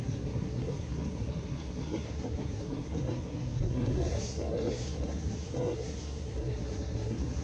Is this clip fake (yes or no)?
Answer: yes